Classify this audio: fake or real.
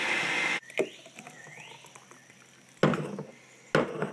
real